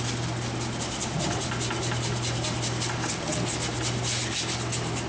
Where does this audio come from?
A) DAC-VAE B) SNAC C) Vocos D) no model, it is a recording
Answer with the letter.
D